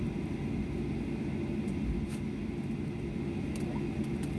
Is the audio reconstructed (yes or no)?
no